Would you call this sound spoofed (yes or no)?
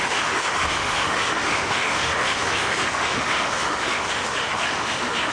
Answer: yes